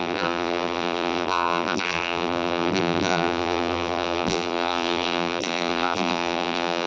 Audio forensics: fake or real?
fake